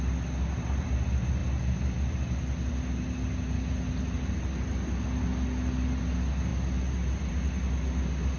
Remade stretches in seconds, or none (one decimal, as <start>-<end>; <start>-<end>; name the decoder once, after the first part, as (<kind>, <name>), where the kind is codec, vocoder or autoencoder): none